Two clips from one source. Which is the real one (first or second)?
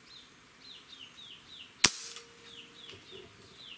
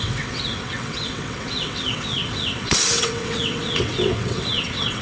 first